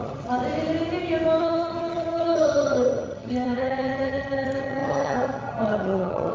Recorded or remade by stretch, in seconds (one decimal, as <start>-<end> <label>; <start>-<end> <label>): 0.0-0.4 remade; 0.4-1.4 recorded; 1.4-6.3 remade

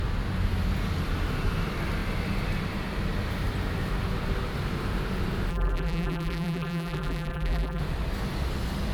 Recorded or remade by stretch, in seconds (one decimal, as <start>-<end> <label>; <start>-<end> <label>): 0.0-5.5 recorded; 5.5-7.8 remade; 7.8-8.9 recorded

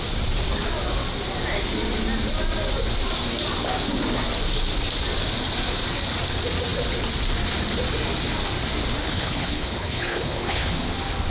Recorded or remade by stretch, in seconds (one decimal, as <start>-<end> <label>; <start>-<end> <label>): 0.0-9.0 recorded; 9.0-10.7 remade; 10.7-11.3 recorded

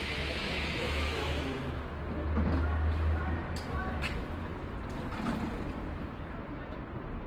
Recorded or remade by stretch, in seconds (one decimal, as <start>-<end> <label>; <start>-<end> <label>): 0.0-2.0 remade; 2.0-7.3 recorded

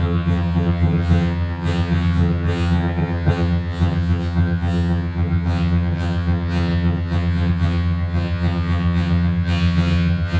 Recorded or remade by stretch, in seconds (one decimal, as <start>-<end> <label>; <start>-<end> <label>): 0.0-10.4 remade

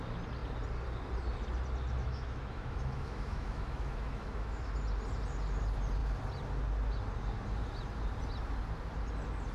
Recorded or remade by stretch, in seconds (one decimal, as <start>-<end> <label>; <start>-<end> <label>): 0.0-2.0 recorded; 2.0-4.7 remade; 4.7-9.5 recorded